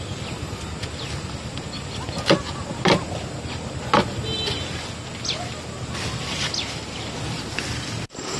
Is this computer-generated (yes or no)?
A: no